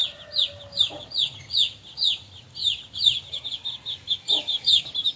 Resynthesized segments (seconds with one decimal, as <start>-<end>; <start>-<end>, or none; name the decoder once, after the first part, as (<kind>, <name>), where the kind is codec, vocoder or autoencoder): none